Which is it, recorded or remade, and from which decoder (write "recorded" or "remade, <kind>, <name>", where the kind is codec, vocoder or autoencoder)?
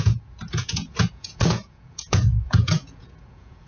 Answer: remade, vocoder, Vocos